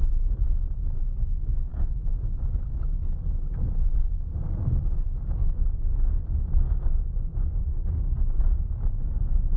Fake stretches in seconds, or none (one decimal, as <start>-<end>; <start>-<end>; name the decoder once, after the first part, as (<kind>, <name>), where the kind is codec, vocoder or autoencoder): 1.7-2.6 (codec, DAC); 5.4-6.2; 7.5-8.2